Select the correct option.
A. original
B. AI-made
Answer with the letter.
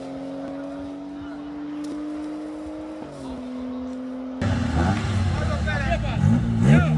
A